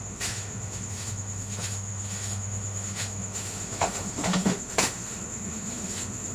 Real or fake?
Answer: fake